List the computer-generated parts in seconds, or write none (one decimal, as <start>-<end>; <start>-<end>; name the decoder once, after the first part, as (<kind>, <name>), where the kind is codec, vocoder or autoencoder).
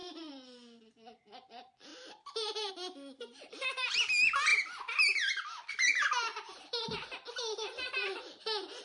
0.0-0.8 (vocoder, BigVGAN v2); 1.9-2.7